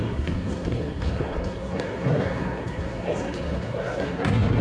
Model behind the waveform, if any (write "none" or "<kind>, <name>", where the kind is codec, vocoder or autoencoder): codec, SNAC